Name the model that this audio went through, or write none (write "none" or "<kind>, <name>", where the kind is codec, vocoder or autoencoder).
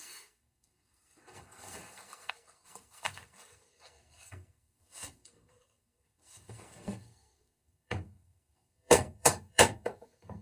codec, SNAC